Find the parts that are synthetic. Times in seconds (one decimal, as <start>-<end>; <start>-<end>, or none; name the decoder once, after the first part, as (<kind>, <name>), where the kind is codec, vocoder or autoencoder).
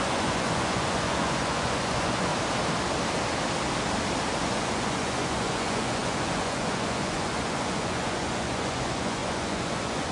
0.0-2.3 (vocoder, Vocos); 4.4-10.1